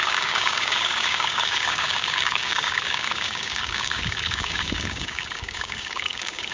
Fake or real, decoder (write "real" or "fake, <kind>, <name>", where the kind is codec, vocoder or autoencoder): fake, codec, DAC